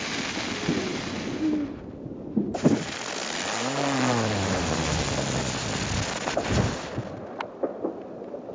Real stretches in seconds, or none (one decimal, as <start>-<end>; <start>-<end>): 0.0-8.5